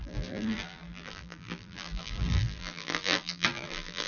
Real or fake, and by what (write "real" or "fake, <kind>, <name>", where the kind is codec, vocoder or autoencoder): fake, vocoder, BigVGAN v2